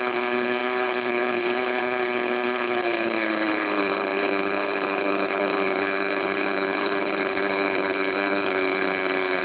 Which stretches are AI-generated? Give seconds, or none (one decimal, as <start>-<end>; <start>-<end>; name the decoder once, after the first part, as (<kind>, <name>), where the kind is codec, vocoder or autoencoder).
0.0-9.4 (codec, HILCodec)